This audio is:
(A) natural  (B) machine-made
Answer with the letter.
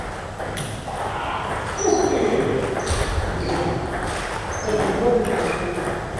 A